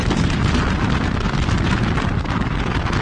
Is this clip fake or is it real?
real